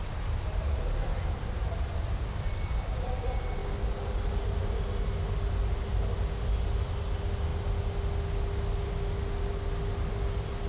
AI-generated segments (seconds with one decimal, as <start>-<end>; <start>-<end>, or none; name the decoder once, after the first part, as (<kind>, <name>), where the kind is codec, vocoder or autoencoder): 0.0-3.6 (vocoder, BigVGAN v2); 6.4-7.5